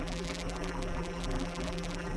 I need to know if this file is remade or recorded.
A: remade